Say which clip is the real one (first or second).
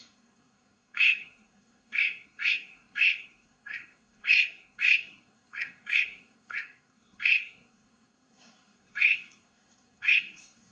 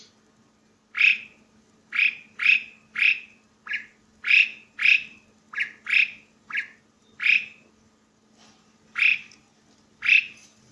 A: second